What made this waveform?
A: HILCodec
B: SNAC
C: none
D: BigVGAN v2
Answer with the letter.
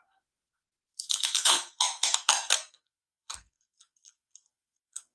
B